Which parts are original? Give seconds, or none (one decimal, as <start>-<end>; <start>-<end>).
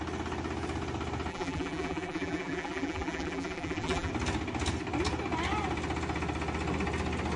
0.0-1.3; 4.1-7.4